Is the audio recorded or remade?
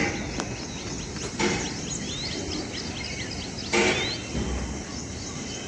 recorded